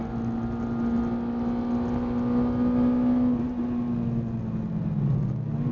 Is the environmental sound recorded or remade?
recorded